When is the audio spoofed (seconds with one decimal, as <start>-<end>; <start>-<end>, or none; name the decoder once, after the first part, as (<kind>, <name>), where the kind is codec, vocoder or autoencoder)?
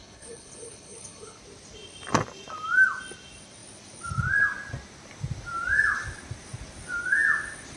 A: 0.0-1.4 (codec, HILCodec)